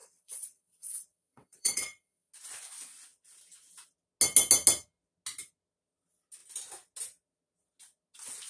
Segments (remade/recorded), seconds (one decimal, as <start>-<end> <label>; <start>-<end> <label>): 0.0-2.3 remade; 2.3-8.5 recorded